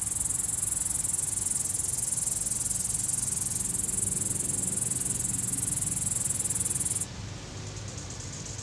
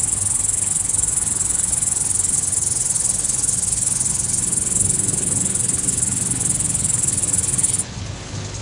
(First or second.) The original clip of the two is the first